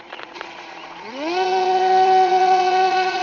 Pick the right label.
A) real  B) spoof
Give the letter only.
B